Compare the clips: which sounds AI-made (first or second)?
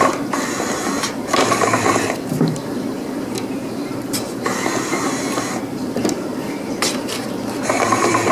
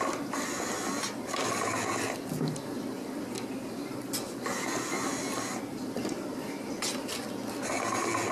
first